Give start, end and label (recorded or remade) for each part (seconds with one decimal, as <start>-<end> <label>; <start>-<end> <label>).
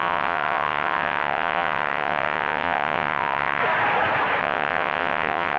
0.0-3.6 remade; 3.6-4.4 recorded; 4.4-5.6 remade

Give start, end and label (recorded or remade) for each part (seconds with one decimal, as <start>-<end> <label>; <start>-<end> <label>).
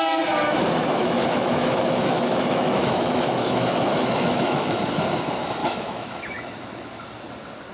0.0-1.0 recorded; 1.0-4.8 remade; 4.8-5.6 recorded; 5.6-6.3 remade; 6.3-7.7 recorded